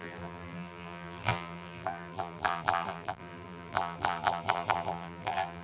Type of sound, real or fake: fake